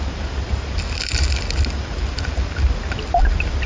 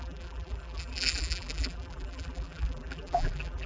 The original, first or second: first